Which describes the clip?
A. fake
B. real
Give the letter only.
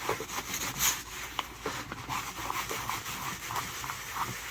B